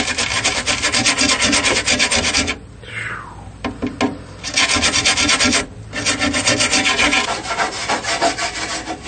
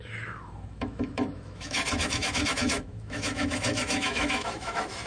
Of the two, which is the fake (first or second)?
second